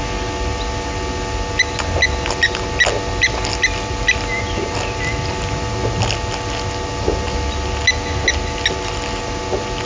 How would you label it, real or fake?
real